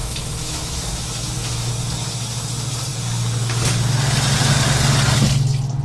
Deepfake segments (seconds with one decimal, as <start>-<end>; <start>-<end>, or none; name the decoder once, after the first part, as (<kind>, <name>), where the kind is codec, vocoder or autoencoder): 0.0-1.7 (autoencoder, DAC-VAE)